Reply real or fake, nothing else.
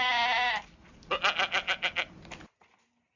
real